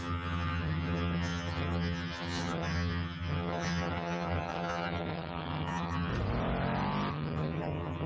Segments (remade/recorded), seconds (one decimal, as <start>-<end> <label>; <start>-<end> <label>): 0.0-6.1 remade; 6.1-7.1 recorded; 7.1-8.1 remade